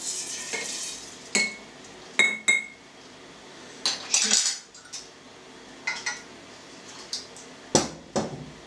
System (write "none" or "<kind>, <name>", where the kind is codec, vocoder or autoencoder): none